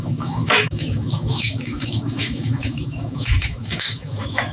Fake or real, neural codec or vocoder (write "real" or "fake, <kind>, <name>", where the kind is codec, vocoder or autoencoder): fake, autoencoder, DAC-VAE